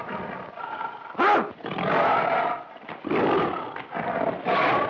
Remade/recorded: recorded